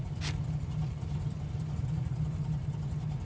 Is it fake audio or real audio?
real